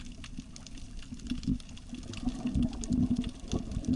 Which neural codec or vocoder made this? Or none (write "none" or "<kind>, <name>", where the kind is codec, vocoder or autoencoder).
none